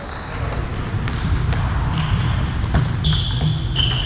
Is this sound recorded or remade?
recorded